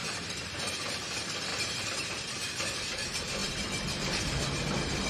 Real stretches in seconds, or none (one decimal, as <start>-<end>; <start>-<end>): 0.6-1.5; 2.4-3.4; 4.2-5.1

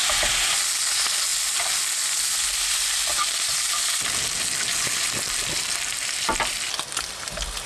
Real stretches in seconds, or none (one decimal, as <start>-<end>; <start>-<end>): 0.7-1.3; 4.3-7.7

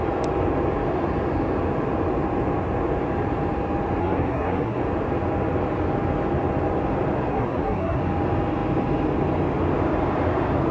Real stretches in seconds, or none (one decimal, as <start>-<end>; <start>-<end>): 0.0-4.0; 4.8-7.3; 8.0-10.7

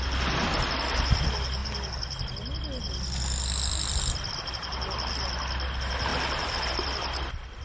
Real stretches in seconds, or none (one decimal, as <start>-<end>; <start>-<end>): 0.0-7.6